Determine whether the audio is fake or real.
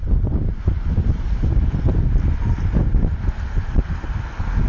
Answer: real